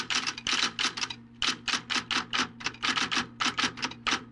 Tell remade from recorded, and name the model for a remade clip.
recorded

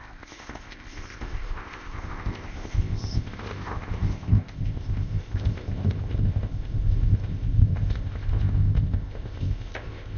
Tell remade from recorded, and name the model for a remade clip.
remade, codec, ZipCodec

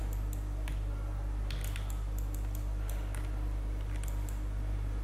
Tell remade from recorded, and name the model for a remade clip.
recorded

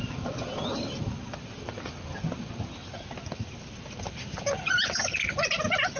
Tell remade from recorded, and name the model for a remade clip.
recorded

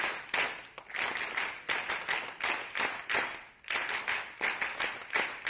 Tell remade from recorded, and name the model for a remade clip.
recorded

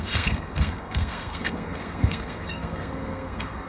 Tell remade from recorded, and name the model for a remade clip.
remade, codec, SNAC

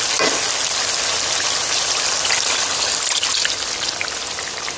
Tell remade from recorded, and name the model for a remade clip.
recorded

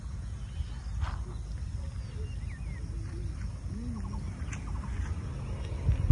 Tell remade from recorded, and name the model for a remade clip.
recorded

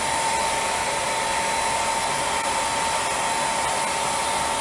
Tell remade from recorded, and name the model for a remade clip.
recorded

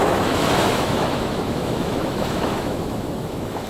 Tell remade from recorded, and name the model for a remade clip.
remade, autoencoder, DAC-VAE